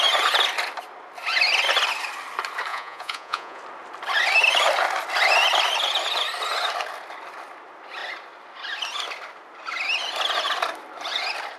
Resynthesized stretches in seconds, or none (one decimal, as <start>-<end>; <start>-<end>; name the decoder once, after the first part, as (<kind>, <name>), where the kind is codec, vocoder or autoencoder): 2.7-3.6 (vocoder, Vocos)